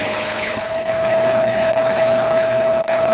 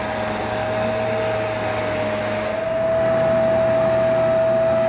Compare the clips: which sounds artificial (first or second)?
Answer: first